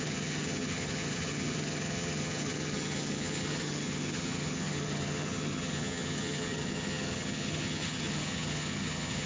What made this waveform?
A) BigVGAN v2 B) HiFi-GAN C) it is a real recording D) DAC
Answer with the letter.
B